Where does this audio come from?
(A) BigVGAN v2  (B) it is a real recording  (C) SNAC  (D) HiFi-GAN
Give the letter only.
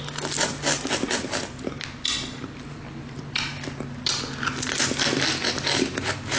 B